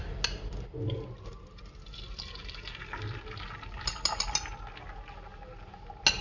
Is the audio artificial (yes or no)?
no